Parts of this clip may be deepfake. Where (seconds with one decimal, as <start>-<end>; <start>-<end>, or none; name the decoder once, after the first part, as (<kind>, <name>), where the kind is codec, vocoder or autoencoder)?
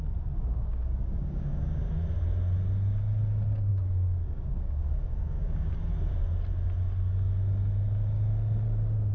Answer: 0.7-1.9 (codec, DAC); 3.7-5.7